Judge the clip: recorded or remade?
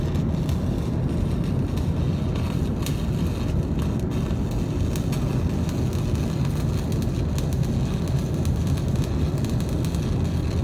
recorded